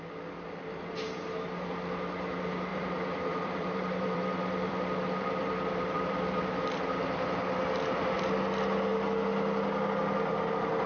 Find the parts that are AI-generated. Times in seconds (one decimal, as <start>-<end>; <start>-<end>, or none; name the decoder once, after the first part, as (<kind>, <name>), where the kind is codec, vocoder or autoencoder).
2.7-6.6 (vocoder, BigVGAN v2)